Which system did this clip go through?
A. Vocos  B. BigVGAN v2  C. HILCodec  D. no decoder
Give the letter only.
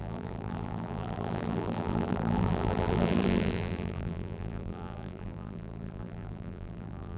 B